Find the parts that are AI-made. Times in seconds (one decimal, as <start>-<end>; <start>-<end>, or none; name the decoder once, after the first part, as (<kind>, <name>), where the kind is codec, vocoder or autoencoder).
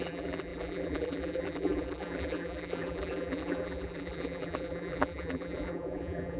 0.0-6.4 (vocoder, BigVGAN v2)